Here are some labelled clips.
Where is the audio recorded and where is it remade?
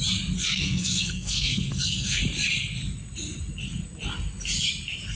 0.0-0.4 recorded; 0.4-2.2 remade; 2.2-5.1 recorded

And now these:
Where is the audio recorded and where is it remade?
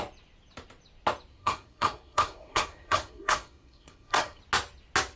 0.0-1.3 recorded; 1.3-4.4 remade; 4.4-5.2 recorded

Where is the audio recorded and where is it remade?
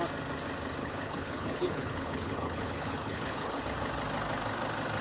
0.0-0.8 recorded; 0.8-3.6 remade; 3.6-5.0 recorded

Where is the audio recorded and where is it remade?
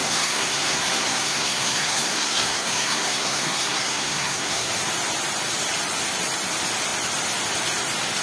0.0-4.7 remade; 4.7-8.2 recorded